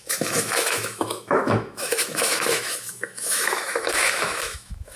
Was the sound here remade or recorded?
remade